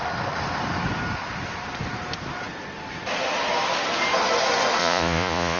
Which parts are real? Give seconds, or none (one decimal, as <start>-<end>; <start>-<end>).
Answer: 0.0-4.8